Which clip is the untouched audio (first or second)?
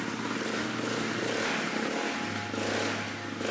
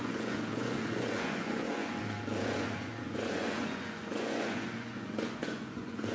first